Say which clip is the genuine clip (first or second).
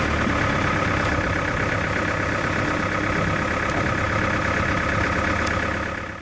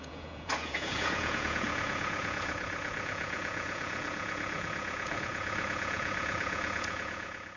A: first